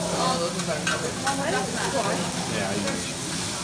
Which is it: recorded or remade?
recorded